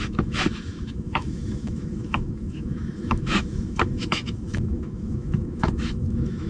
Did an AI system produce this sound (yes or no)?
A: yes